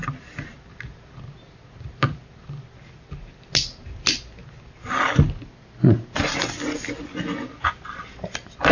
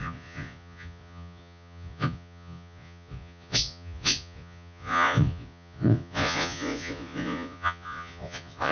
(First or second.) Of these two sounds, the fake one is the second